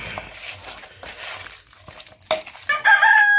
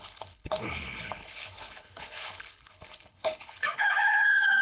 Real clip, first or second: first